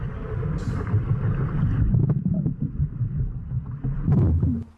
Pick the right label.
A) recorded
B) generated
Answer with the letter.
A